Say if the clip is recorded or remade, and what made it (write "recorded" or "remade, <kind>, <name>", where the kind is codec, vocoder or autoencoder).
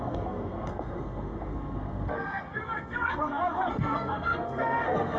remade, codec, SNAC